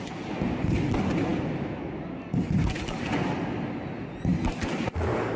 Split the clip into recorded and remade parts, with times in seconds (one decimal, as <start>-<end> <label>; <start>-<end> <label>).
0.0-5.4 recorded